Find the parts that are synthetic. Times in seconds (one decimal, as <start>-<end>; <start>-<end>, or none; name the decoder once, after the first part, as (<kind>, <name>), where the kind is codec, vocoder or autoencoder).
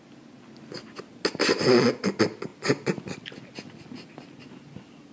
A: none